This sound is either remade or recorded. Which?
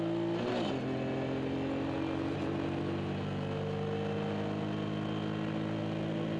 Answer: recorded